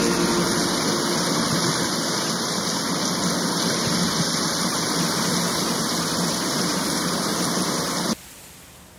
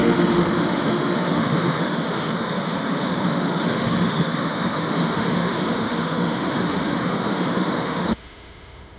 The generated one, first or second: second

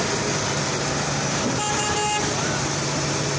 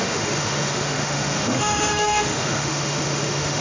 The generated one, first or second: second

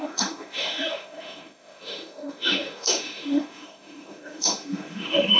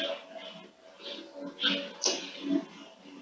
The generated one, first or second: first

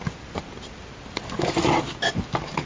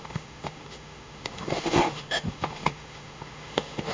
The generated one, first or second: second